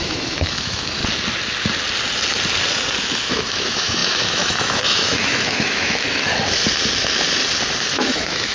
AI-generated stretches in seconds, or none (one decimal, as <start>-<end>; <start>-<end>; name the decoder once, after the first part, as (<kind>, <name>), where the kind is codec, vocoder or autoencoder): 0.0-1.0 (autoencoder, DAC-VAE); 3.0-6.3; 7.8-8.5